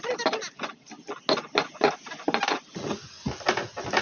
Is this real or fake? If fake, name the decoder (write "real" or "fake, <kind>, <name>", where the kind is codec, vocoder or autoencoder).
real